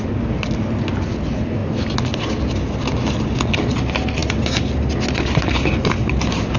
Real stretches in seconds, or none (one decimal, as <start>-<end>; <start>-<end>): 0.0-6.6